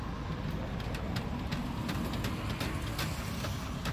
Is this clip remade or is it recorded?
recorded